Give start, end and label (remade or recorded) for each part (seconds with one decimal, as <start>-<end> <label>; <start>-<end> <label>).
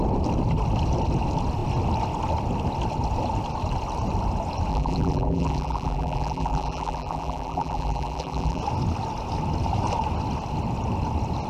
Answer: 0.0-4.7 recorded; 4.7-8.6 remade; 8.6-11.5 recorded